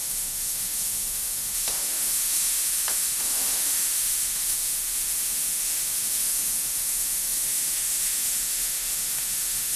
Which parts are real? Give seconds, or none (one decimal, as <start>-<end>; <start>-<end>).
none